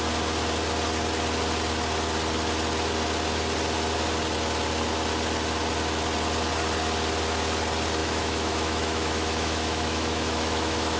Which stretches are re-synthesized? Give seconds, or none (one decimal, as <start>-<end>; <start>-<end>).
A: 8.0-11.0